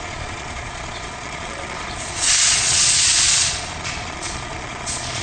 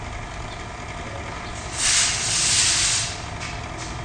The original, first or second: second